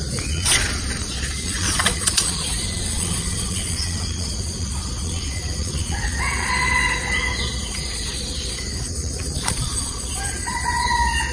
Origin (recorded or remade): remade